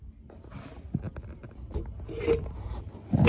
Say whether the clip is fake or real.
real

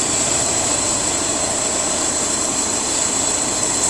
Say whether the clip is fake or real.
fake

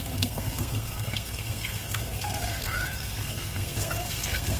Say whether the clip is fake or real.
fake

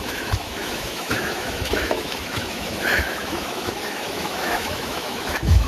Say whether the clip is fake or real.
fake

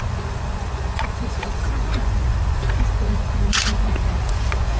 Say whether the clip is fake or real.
fake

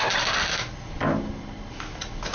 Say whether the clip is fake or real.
real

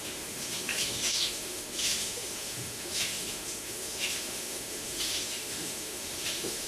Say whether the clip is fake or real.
fake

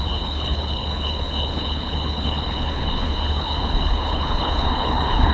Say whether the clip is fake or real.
fake